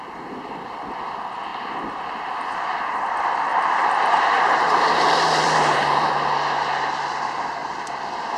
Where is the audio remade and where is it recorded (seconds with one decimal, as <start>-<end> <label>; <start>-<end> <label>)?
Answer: 0.0-3.5 recorded; 3.5-6.1 remade; 6.1-8.4 recorded